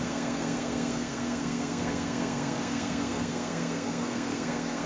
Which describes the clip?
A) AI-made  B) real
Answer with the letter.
A